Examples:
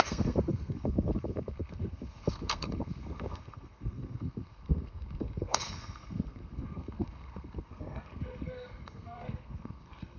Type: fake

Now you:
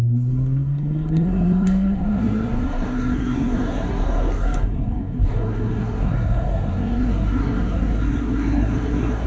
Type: fake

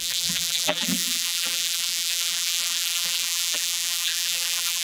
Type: fake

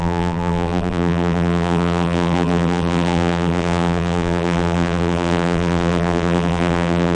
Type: fake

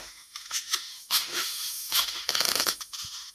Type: fake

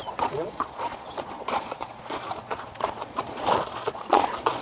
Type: fake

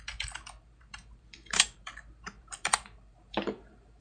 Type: fake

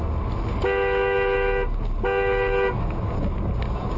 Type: real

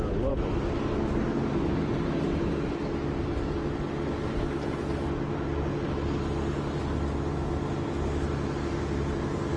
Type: real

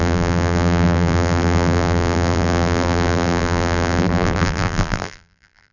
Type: fake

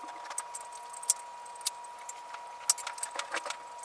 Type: real